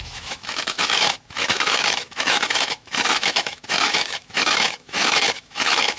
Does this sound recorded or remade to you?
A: remade